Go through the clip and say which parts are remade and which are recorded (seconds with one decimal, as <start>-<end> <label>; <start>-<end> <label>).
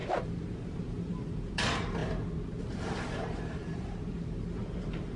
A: 0.0-2.0 remade; 2.0-2.6 recorded; 2.6-5.2 remade